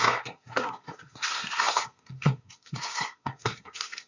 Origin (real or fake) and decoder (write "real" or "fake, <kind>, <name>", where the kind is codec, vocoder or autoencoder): fake, codec, SNAC